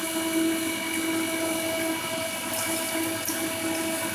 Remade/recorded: recorded